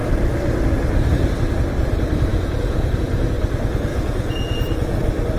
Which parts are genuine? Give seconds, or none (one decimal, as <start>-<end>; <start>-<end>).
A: 0.0-2.3; 3.3-3.9; 4.9-5.4